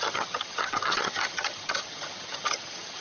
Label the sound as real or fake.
fake